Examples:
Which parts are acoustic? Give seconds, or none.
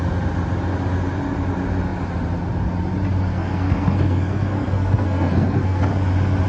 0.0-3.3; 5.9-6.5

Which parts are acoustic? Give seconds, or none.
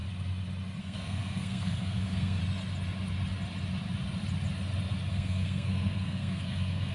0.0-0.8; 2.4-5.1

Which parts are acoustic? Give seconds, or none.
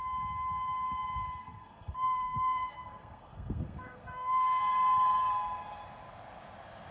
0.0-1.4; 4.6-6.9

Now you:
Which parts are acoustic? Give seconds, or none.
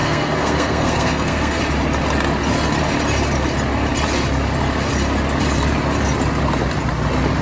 1.6-7.4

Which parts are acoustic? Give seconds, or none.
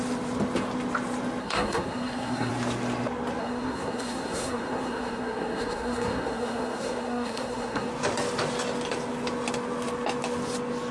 0.0-1.4; 2.5-3.4; 7.9-10.9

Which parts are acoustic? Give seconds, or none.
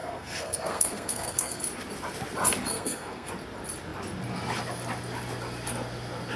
1.6-2.7; 3.3-6.4